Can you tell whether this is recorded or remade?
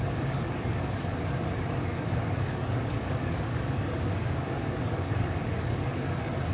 remade